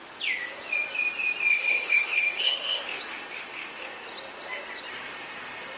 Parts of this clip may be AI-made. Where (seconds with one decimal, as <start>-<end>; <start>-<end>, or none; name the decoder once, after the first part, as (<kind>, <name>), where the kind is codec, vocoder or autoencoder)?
1.5-2.8 (codec, HILCodec)